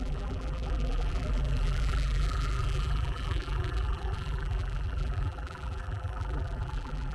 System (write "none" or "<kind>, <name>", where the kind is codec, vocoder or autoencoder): vocoder, BigVGAN v2